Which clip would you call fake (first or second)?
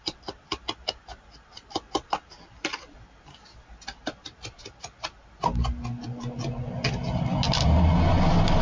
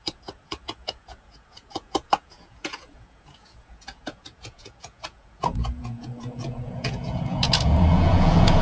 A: second